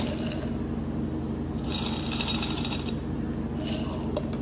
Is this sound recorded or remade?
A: recorded